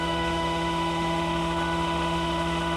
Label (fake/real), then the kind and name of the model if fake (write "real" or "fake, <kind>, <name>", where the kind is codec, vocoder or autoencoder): fake, autoencoder, DAC-VAE